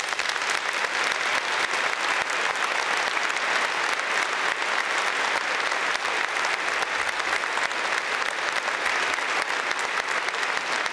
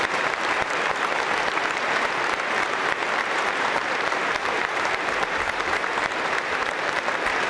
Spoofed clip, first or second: second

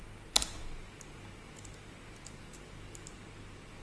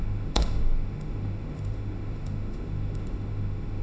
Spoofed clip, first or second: second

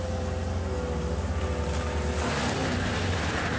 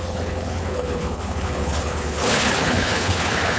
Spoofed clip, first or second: second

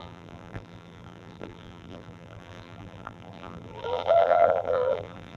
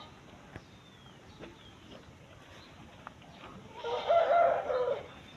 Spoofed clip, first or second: first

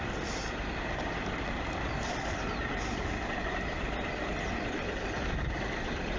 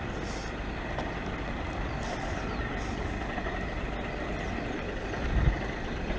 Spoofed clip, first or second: first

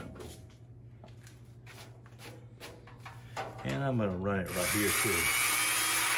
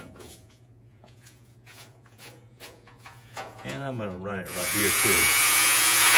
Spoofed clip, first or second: second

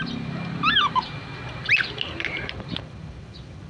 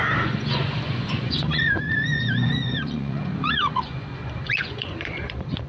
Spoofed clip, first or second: second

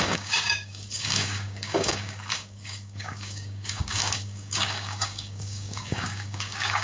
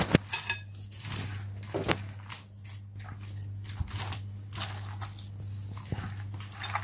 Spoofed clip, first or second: first